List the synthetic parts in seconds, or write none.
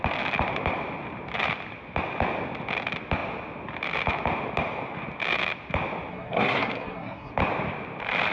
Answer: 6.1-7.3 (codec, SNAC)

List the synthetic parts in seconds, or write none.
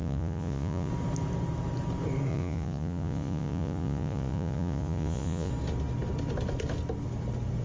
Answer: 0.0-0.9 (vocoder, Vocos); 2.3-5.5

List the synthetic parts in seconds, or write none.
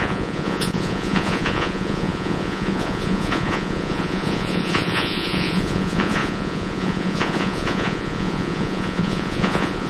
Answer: 0.0-9.9 (vocoder, Vocos)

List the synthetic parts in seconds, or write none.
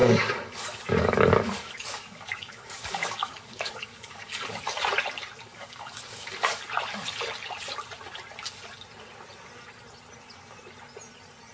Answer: 0.0-4.6 (codec, DAC); 5.5-6.6